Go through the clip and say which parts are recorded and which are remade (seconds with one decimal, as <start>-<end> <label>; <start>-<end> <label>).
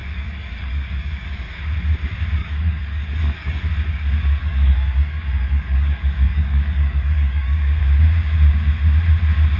0.0-1.6 remade; 1.6-2.4 recorded; 2.4-3.6 remade; 3.6-4.4 recorded; 4.4-7.8 remade; 7.8-9.6 recorded